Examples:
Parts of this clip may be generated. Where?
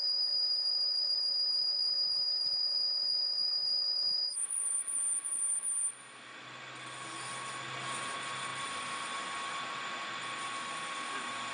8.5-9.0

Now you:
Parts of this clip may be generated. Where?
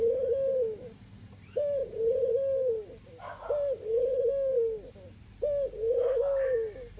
none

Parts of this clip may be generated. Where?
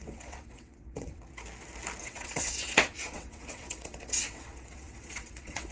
0.0-1.2; 2.0-5.7